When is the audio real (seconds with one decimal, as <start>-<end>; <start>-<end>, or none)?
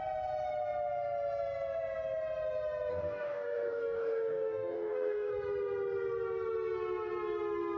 0.0-2.9; 5.3-7.8